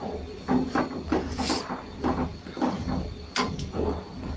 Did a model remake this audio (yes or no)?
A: no